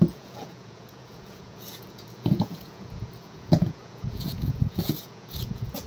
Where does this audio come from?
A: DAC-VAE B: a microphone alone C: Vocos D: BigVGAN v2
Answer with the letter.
C